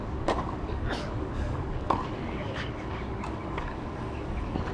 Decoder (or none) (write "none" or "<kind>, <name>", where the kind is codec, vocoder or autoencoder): codec, DAC